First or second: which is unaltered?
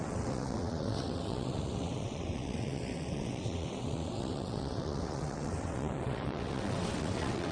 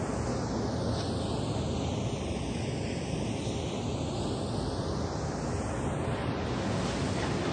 second